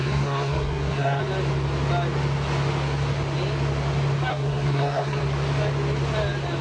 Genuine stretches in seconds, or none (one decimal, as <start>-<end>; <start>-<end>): 1.2-4.3; 5.2-6.6